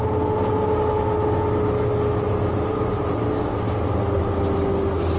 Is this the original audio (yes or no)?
yes